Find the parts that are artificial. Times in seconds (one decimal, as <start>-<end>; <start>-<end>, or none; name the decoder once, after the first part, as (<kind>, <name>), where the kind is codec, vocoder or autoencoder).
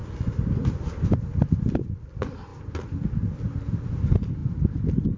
1.4-2.5 (vocoder, BigVGAN v2); 3.9-5.2